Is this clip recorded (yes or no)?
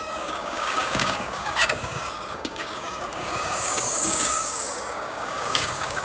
no